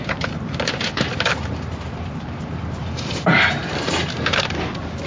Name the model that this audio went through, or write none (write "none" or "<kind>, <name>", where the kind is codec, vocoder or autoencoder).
vocoder, BigVGAN v2